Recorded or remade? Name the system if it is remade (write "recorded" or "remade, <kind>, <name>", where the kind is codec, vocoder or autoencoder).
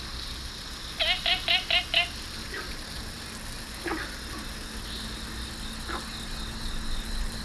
recorded